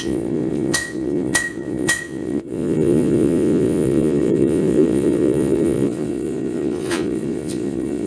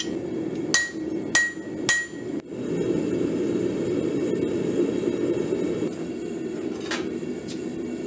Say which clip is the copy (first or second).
first